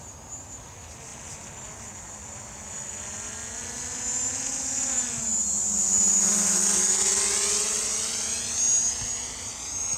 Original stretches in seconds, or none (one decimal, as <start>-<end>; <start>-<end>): 0.0-10.0